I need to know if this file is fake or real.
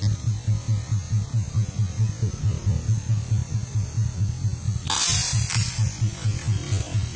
real